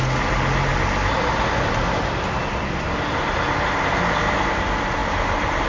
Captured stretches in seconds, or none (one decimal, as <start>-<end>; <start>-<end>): 0.0-5.7